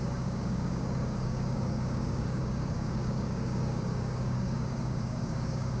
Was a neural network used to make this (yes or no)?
yes